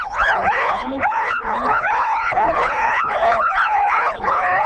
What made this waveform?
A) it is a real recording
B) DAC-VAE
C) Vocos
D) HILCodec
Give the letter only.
D